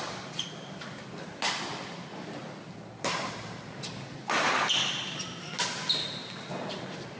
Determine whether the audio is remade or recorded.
recorded